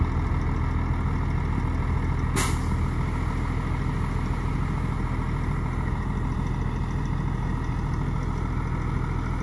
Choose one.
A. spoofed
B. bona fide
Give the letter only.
B